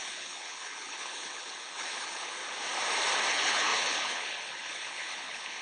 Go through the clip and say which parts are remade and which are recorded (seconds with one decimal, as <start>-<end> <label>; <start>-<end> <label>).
0.0-2.4 remade; 2.4-3.3 recorded; 3.3-5.6 remade